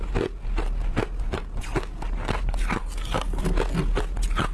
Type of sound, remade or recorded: recorded